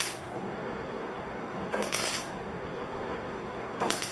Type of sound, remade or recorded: remade